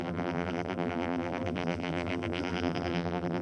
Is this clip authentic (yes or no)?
no